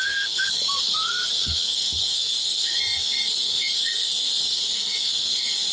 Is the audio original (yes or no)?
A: no